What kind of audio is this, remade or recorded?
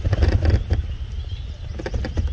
recorded